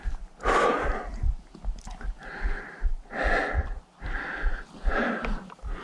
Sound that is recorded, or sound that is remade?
recorded